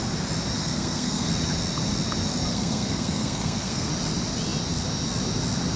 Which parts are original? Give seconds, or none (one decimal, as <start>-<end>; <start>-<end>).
0.0-0.6; 1.3-2.5; 3.9-5.8